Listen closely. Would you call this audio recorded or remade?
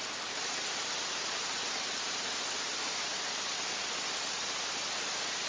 recorded